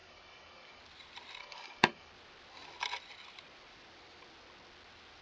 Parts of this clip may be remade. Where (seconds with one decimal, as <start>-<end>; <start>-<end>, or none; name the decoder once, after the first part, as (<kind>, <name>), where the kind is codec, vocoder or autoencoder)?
0.0-0.8 (codec, DAC); 1.4-2.1